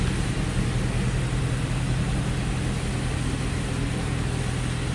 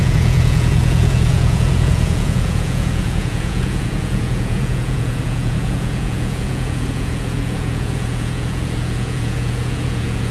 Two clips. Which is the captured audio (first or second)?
first